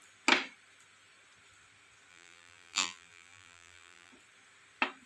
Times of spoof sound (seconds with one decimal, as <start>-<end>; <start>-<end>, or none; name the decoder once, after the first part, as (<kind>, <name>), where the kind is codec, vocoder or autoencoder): 2.1-4.1 (vocoder, BigVGAN v2)

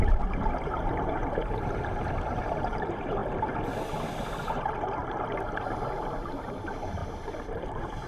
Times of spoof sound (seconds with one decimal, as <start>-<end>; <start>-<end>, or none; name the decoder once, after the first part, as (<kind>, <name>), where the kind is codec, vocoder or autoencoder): 0.0-3.2 (vocoder, BigVGAN v2); 4.3-5.0; 6.3-8.1